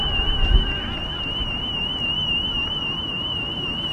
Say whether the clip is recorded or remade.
recorded